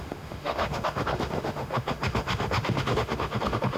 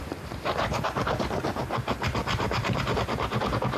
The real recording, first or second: second